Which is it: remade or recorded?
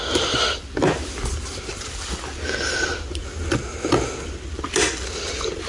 recorded